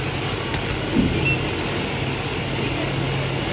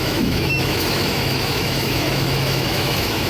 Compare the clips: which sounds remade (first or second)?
second